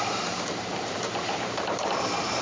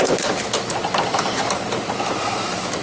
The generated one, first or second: first